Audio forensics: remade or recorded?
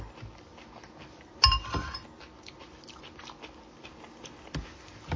recorded